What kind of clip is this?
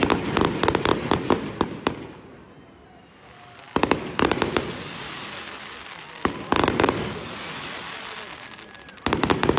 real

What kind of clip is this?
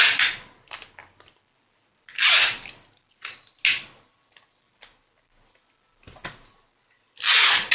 real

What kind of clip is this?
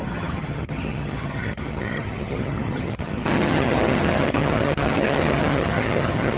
fake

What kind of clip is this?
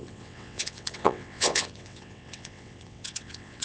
fake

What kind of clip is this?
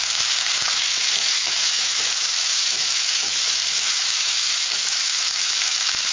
fake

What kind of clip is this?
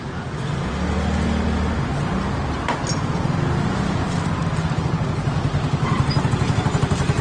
real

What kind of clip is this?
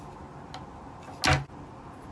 real